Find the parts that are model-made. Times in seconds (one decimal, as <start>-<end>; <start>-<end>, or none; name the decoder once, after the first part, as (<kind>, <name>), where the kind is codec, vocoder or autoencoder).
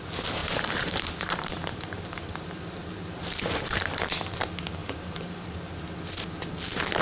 0.4-4.0 (vocoder, BigVGAN v2); 4.8-5.7